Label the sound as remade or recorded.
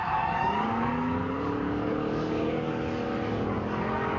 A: remade